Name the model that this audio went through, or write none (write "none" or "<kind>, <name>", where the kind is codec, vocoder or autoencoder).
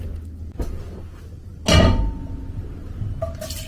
none